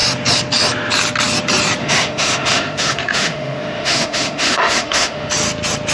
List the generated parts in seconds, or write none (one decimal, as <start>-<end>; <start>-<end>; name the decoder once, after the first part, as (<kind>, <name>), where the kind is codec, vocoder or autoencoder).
1.8-5.3 (autoencoder, DAC-VAE)